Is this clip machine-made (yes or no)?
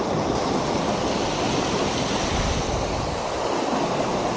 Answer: no